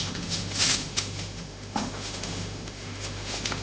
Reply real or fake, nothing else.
fake